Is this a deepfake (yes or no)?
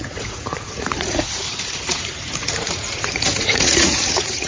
yes